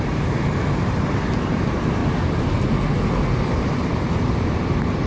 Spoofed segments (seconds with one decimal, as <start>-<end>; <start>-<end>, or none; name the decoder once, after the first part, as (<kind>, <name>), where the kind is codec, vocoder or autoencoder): 0.0-2.0 (vocoder, BigVGAN v2); 3.6-5.1